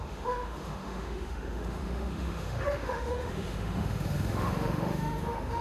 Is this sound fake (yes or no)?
yes